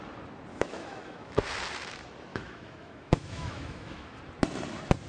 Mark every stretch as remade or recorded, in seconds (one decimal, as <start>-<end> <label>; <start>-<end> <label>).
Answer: 0.0-0.5 recorded; 0.5-1.4 remade; 1.4-2.3 recorded; 2.3-4.2 remade; 4.2-5.1 recorded